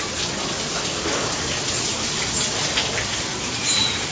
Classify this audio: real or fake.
real